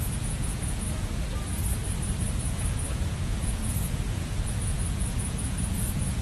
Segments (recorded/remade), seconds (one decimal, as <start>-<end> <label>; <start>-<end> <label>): 0.0-1.5 remade; 1.5-2.2 recorded; 2.2-6.2 remade